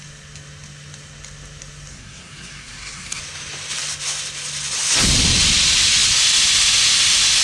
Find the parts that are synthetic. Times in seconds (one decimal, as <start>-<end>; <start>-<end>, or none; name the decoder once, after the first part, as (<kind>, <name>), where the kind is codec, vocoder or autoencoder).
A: 1.9-3.2 (codec, SNAC)